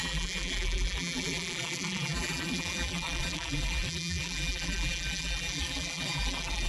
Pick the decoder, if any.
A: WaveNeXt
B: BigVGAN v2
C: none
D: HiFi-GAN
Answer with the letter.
B